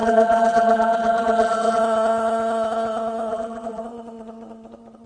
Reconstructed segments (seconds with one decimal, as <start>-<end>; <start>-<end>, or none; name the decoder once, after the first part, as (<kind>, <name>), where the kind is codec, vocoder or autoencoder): 0.0-1.8 (vocoder, BigVGAN v2); 3.3-3.8